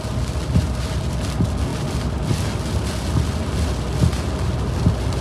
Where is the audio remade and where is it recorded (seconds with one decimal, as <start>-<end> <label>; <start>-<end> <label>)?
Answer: 0.0-5.2 recorded